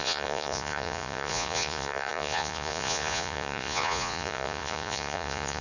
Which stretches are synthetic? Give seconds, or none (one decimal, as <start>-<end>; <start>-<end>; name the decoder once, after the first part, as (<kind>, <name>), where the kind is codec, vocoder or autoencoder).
0.0-5.6 (vocoder, Vocos)